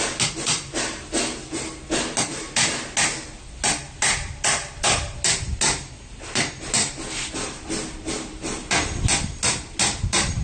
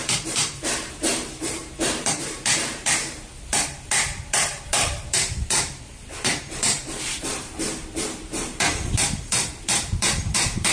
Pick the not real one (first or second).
second